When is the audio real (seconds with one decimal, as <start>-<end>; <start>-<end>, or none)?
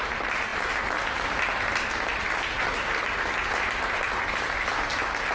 0.0-5.3